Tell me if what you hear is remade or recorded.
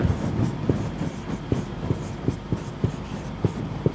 recorded